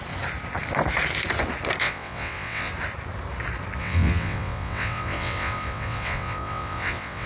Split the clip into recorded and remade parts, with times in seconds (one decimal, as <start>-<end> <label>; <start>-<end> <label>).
0.0-1.8 recorded; 1.8-2.7 remade; 2.7-3.8 recorded; 3.8-7.3 remade